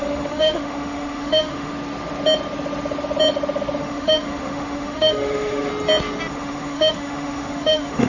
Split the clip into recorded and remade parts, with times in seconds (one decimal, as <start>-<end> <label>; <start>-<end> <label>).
0.0-1.7 remade; 1.7-3.8 recorded; 3.8-5.7 remade; 5.7-6.3 recorded; 6.3-8.1 remade